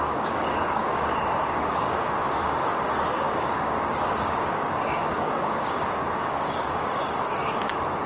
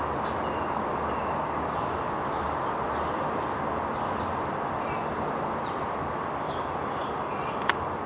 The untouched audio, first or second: second